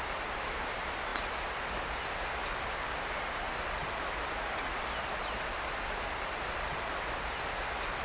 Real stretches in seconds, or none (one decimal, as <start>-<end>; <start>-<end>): 0.0-8.0